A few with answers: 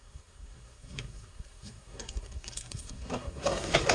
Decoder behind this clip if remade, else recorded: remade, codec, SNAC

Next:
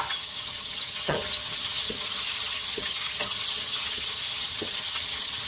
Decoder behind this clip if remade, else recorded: remade, vocoder, HiFi-GAN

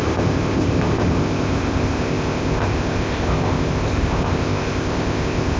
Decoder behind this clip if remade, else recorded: remade, codec, ZipCodec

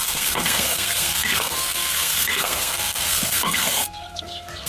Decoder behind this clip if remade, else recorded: remade, codec, SNAC